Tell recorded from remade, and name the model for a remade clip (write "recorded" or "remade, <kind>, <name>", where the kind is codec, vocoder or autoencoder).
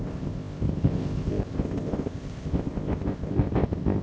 remade, codec, ZipCodec